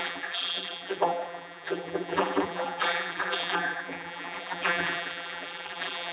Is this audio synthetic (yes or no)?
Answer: yes